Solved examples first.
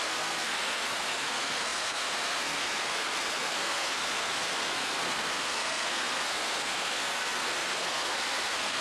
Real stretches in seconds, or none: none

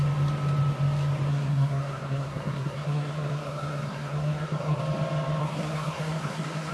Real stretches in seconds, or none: 0.0-1.3; 4.8-5.4

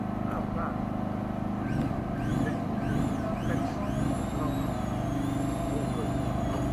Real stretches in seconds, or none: 0.0-6.7

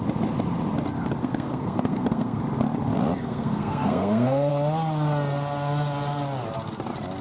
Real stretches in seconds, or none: 0.0-1.2; 2.4-3.2; 4.5-7.2

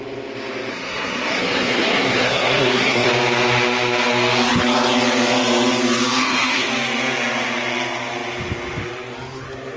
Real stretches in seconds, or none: 0.0-0.7; 3.1-6.2; 6.7-9.8

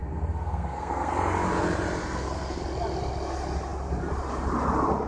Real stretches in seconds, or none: 1.1-2.0; 2.6-5.1